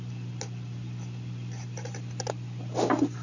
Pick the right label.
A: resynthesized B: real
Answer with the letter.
B